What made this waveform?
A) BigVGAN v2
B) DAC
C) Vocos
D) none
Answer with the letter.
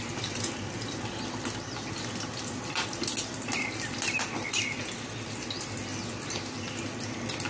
D